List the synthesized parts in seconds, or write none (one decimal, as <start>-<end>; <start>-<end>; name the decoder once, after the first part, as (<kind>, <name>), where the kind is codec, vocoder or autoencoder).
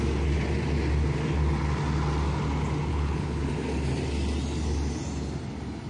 2.9-3.5 (codec, HILCodec)